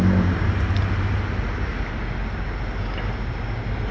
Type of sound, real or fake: real